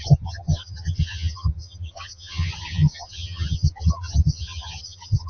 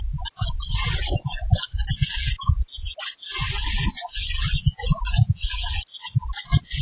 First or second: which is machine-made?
first